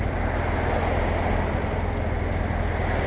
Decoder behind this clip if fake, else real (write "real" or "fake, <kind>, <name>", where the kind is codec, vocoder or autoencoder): real